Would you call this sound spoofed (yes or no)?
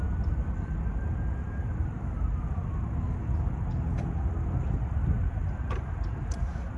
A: no